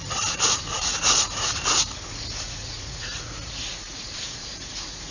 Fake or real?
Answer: fake